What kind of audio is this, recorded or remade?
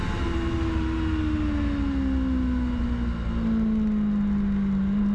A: recorded